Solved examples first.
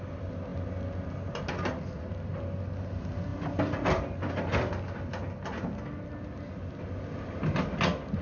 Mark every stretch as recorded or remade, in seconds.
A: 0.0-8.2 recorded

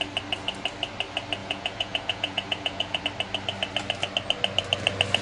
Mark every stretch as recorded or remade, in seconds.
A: 0.0-1.4 recorded; 1.4-3.0 remade; 3.0-5.2 recorded